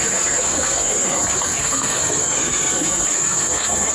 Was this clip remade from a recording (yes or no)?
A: yes